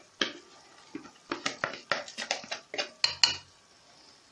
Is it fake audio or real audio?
real